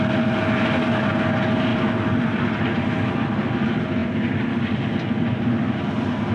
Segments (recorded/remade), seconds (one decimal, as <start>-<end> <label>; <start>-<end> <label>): 0.0-1.7 recorded; 1.7-2.6 remade; 2.6-6.3 recorded